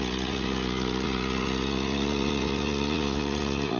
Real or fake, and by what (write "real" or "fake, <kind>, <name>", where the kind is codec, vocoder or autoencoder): fake, vocoder, Vocos